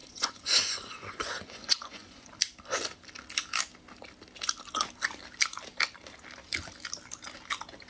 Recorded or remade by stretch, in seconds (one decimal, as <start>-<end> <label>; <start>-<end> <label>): 0.0-2.3 remade; 2.3-7.9 recorded